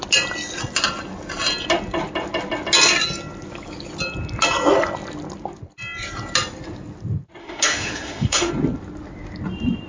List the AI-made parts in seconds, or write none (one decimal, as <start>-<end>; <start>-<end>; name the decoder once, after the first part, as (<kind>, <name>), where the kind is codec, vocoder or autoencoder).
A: 7.4-8.5 (autoencoder, DAC-VAE)